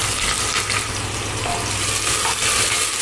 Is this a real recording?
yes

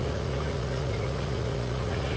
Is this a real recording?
no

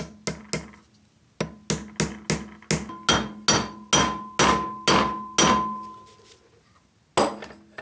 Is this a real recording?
yes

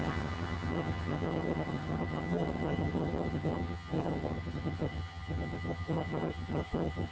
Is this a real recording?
no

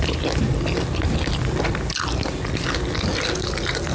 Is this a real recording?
yes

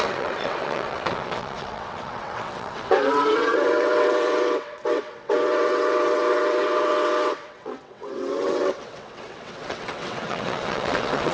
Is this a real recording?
no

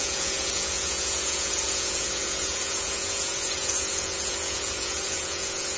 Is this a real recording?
no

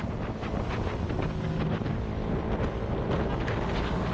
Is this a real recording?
yes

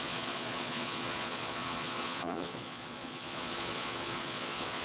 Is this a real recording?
no